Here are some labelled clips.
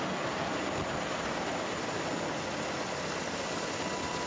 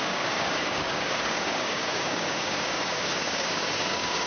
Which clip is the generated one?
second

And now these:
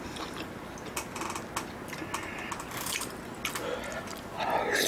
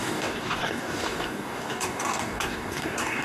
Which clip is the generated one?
second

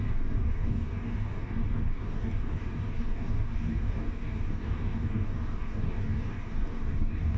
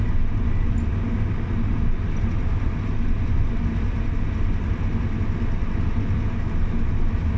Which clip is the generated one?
first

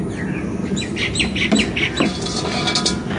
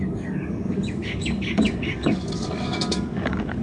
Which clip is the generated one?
second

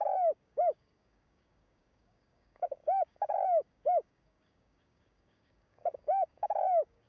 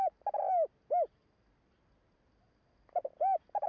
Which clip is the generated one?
first